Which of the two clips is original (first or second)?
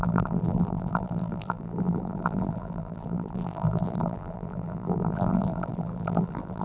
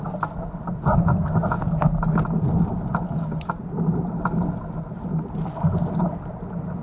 second